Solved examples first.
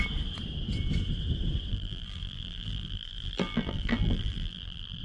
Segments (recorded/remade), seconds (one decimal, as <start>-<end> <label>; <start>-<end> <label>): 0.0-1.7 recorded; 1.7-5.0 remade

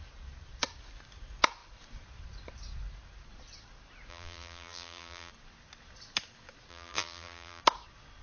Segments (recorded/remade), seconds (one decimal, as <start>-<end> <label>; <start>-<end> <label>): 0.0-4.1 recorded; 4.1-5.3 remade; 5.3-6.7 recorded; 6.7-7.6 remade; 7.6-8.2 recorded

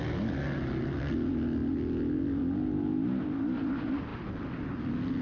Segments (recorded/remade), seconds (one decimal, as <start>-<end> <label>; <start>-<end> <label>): 0.0-5.2 recorded